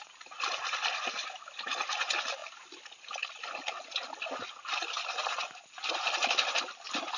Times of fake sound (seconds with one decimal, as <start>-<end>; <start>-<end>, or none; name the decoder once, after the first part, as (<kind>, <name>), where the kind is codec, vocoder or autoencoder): none